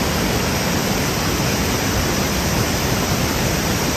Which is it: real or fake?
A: fake